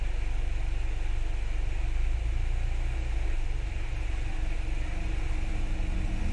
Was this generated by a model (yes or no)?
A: no